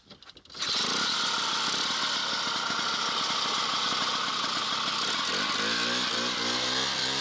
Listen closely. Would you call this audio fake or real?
real